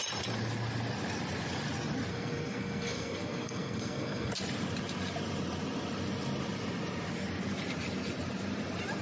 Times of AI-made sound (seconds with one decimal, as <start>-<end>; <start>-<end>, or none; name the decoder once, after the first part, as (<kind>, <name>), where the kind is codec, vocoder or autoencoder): 2.1-4.3 (codec, SNAC)